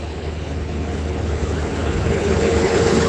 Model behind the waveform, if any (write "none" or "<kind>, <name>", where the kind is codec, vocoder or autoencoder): codec, HILCodec